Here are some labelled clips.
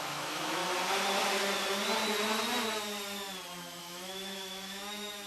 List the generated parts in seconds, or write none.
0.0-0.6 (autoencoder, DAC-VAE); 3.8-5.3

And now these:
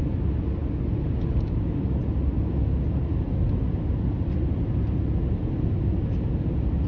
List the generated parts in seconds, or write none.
none

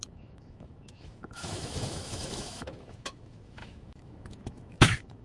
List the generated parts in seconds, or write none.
0.0-5.2 (autoencoder, DAC-VAE)

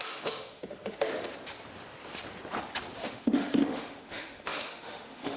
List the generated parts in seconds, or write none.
0.0-1.3 (autoencoder, DAC-VAE); 3.0-5.4

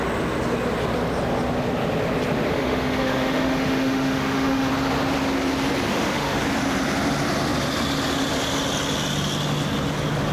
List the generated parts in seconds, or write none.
2.5-4.7 (autoencoder, DAC-VAE); 5.9-6.4